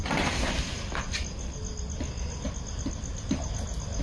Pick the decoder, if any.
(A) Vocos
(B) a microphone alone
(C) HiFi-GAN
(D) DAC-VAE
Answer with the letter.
B